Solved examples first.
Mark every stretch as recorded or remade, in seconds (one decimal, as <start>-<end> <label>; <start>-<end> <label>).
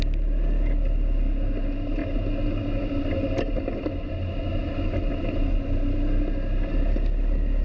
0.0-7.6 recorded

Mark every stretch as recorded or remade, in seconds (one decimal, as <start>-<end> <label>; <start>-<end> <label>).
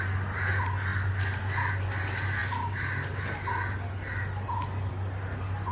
0.0-5.7 recorded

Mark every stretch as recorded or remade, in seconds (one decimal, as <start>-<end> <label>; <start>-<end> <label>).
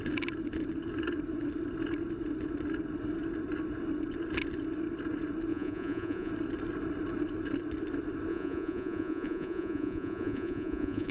0.0-5.5 recorded; 5.5-6.3 remade; 6.3-8.3 recorded; 8.3-11.1 remade